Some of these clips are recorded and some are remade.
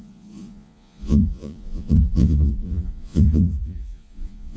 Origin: remade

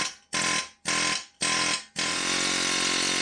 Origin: recorded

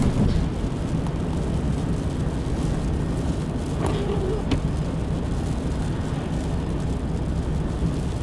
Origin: recorded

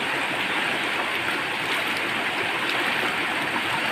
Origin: recorded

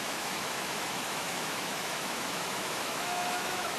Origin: remade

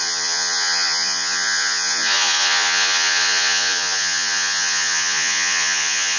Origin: remade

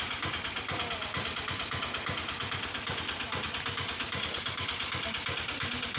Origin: recorded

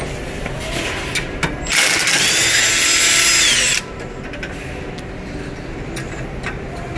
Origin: recorded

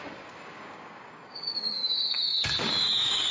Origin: remade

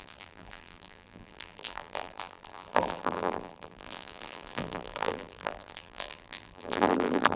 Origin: remade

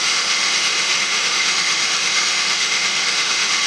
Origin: remade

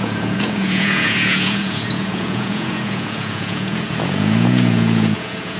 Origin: remade